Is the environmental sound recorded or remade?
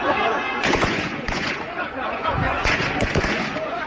remade